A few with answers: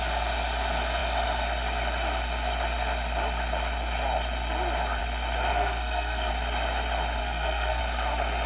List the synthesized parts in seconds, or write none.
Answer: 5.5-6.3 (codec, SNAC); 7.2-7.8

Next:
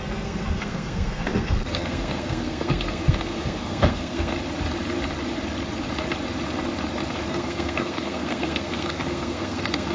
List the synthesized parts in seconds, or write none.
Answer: 0.0-4.3 (codec, SNAC); 7.3-9.9

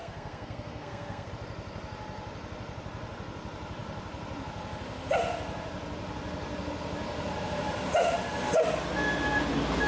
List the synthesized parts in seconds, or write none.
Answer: 0.0-1.3 (codec, SNAC)

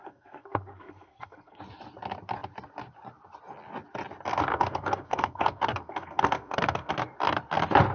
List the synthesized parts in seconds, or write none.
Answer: 0.0-1.6 (codec, SNAC); 4.5-6.9

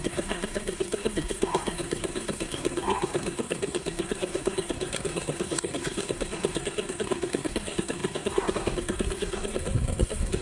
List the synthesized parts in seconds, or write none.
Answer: 0.0-10.4 (codec, SNAC)